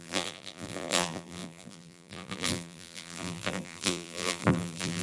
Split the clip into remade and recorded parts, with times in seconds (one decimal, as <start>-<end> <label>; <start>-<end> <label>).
0.0-5.0 remade